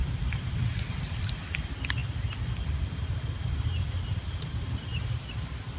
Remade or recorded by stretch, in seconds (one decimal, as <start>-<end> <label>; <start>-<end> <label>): 0.0-5.8 recorded